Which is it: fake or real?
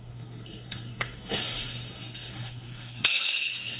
fake